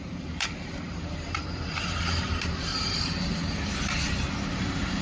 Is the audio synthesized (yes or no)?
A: yes